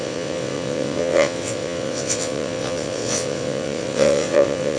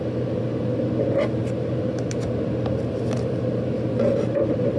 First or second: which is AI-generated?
first